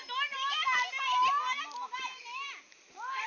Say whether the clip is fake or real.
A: real